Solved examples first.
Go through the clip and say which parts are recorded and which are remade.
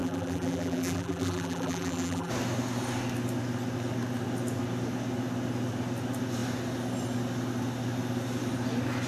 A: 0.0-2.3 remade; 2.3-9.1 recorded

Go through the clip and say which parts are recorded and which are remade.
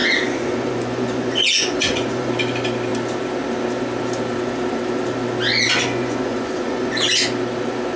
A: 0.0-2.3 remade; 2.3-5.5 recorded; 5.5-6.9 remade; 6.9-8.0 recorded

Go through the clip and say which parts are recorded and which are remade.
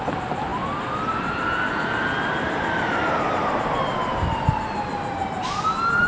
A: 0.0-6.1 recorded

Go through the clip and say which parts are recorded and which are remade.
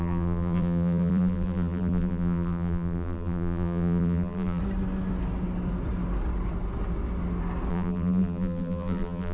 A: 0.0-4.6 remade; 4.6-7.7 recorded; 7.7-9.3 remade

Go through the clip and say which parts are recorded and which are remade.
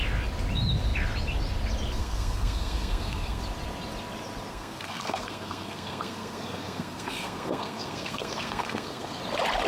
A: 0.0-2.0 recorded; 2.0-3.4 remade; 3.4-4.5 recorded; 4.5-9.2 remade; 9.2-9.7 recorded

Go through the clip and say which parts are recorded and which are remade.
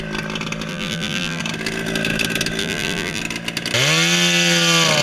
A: 0.0-0.7 recorded; 0.7-1.4 remade; 1.4-2.6 recorded; 2.6-3.2 remade; 3.2-5.0 recorded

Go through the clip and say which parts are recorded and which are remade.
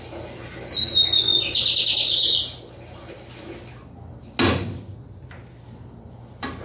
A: 0.0-6.6 recorded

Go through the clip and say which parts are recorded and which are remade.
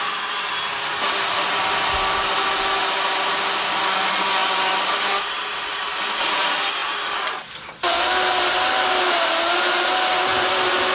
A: 0.0-4.4 recorded; 4.4-6.0 remade; 6.0-10.9 recorded